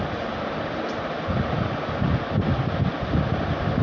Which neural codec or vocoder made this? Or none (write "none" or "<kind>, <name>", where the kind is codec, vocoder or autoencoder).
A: none